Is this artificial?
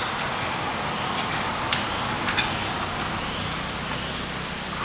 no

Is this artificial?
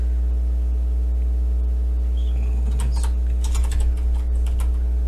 no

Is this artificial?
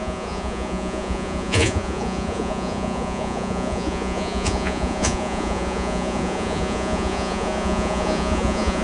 yes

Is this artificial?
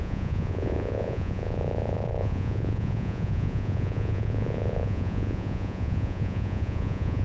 yes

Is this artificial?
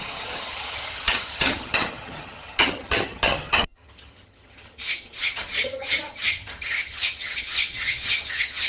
yes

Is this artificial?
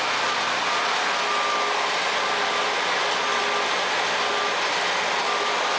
no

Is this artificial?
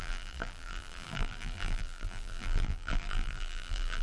yes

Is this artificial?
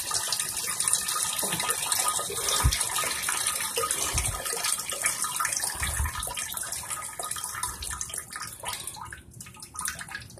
no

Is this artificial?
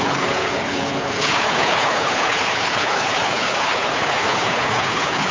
yes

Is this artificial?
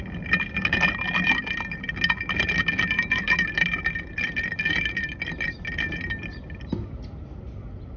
no